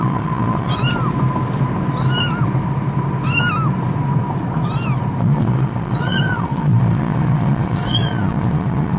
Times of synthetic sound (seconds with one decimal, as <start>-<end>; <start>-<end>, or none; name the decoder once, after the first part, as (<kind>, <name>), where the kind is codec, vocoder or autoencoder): 0.0-0.8 (vocoder, Vocos); 5.2-9.0